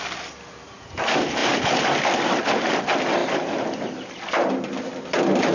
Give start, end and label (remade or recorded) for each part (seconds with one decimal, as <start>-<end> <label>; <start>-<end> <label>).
0.0-1.4 recorded; 1.4-2.8 remade; 2.8-3.2 recorded; 3.2-4.3 remade; 4.3-5.5 recorded